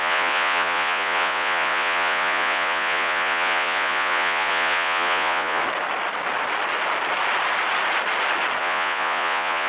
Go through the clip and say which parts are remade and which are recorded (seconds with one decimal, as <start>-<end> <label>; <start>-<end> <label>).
0.0-5.6 remade; 5.6-8.6 recorded; 8.6-9.7 remade